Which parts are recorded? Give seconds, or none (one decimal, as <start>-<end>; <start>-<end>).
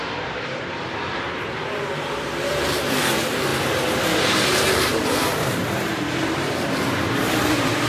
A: 3.5-4.0